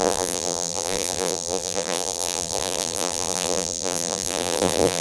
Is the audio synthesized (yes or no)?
yes